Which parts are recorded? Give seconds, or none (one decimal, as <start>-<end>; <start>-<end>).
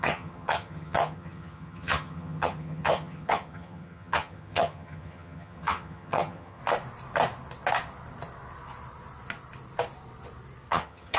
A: 6.6-10.7